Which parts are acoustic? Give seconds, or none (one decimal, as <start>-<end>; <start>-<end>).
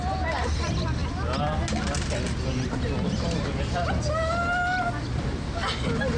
0.0-6.2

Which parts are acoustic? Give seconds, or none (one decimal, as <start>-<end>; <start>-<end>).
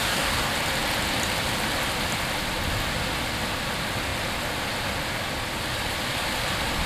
0.5-6.9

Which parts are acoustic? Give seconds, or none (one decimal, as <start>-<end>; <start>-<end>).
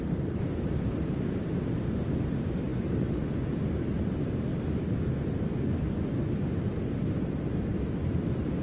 0.0-8.6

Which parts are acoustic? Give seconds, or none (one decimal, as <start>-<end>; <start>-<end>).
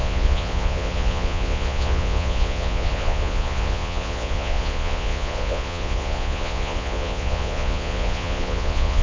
none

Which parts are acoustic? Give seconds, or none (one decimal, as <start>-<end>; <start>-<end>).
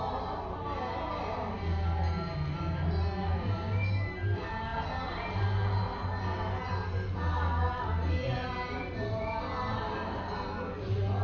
0.0-11.2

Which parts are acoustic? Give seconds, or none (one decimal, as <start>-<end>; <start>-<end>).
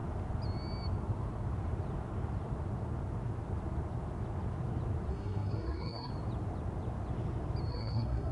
0.0-5.1; 6.1-7.7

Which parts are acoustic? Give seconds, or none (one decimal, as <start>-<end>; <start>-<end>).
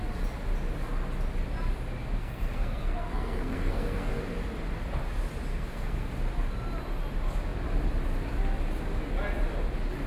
0.0-2.2; 4.1-5.5; 6.1-10.1